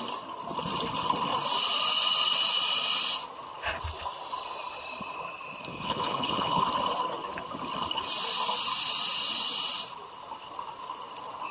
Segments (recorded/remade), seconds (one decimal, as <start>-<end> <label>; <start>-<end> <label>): 0.0-5.7 recorded; 5.7-6.6 remade; 6.6-11.5 recorded